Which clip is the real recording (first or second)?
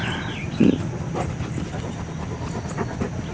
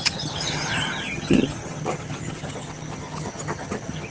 first